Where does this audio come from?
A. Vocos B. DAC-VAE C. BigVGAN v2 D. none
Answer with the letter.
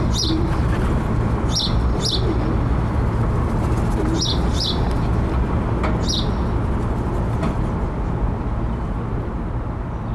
D